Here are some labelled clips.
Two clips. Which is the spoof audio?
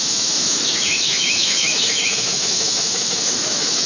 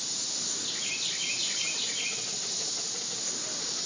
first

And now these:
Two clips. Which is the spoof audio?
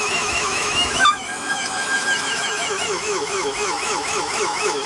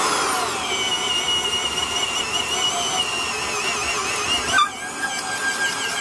first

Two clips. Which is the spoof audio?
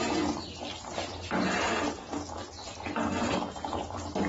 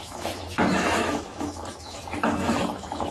second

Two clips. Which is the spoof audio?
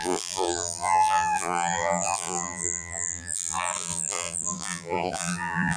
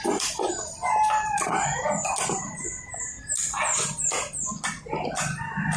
first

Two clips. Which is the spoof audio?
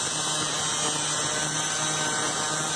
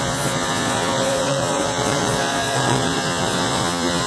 second